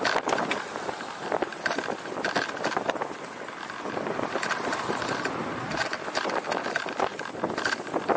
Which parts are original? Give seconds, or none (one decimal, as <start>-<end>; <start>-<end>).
0.0-8.2